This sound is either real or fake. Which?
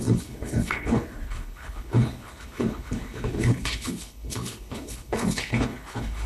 fake